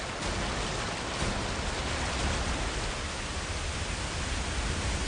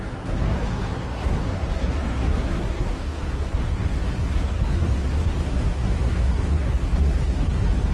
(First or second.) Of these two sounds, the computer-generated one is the second